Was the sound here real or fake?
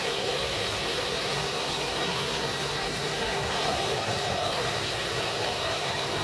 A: fake